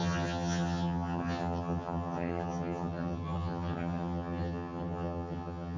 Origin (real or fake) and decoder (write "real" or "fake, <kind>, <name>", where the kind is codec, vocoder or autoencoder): fake, vocoder, HiFi-GAN